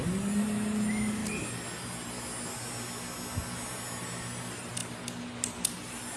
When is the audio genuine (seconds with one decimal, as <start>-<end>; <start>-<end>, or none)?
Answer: 0.0-6.2

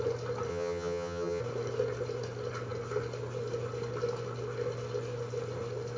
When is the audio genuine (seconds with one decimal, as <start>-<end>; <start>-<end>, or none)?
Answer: 0.0-0.5; 1.4-6.0

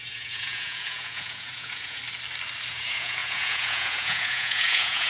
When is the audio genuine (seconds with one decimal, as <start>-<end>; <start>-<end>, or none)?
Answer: 2.0-2.7